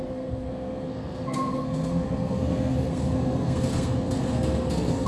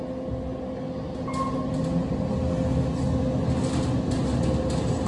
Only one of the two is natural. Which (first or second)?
second